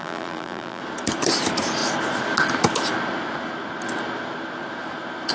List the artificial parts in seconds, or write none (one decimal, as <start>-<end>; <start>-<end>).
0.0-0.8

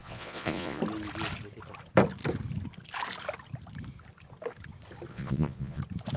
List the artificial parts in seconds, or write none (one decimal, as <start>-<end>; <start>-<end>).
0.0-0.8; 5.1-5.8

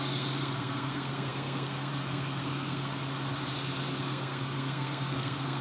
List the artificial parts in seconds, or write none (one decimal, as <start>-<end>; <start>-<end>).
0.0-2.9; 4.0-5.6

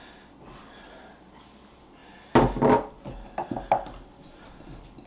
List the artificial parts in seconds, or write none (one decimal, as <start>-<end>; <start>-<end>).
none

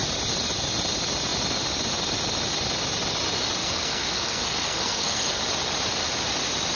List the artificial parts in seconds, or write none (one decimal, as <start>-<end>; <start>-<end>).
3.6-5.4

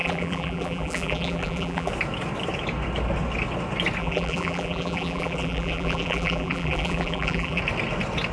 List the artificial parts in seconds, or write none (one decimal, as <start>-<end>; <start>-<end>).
0.0-1.9; 4.0-7.6

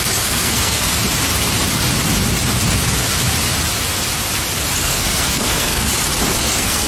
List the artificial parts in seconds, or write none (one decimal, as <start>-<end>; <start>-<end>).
0.0-0.9; 4.8-5.9; 6.4-6.9

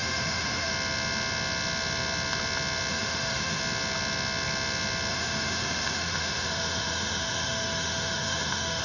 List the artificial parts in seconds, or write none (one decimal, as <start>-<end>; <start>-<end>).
0.0-0.7; 2.9-3.6; 5.1-8.8